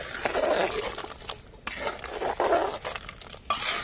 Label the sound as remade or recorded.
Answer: recorded